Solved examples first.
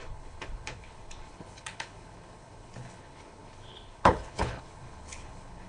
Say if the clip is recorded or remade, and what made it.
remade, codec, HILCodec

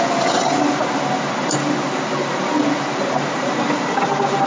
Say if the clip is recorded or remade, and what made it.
recorded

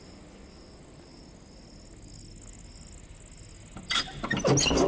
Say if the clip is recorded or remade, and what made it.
recorded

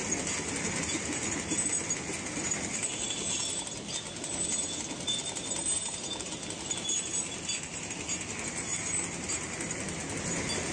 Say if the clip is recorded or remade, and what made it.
recorded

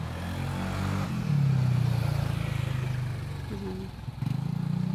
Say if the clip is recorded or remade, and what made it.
recorded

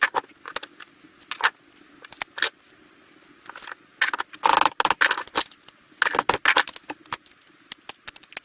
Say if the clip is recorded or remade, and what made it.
recorded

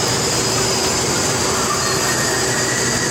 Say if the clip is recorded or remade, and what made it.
recorded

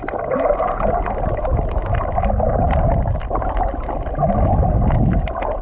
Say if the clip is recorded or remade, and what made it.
recorded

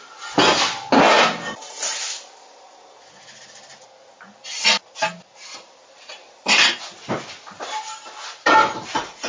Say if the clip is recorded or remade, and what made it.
recorded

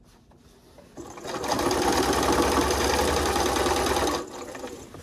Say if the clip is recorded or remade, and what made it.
recorded